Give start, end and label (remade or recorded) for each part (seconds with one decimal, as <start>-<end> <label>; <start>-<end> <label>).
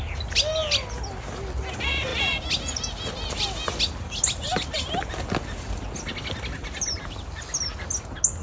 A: 0.0-8.4 recorded